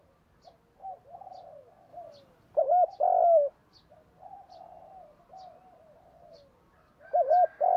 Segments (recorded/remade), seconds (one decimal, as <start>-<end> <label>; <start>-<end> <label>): 0.0-7.8 recorded

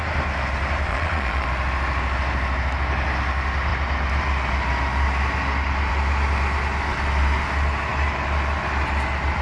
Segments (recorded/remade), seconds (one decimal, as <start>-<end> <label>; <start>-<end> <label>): 0.0-0.9 recorded; 0.9-1.5 remade; 1.5-9.4 recorded

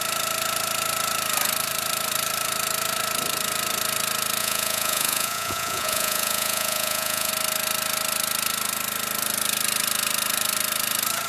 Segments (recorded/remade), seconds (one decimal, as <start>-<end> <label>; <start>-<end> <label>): 0.0-4.4 recorded; 4.4-7.3 remade; 7.3-11.3 recorded

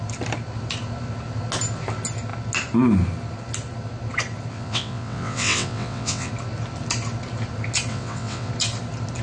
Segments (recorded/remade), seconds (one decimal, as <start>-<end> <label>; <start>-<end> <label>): 0.0-4.5 recorded; 4.5-6.3 remade; 6.3-7.9 recorded; 7.9-8.5 remade; 8.5-9.2 recorded

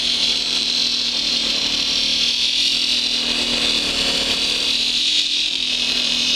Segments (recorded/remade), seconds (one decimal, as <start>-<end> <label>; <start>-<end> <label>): 0.0-0.8 remade; 0.8-1.5 recorded; 1.5-2.1 remade; 2.1-4.3 recorded; 4.3-6.4 remade